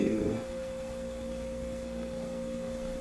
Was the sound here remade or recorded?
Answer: remade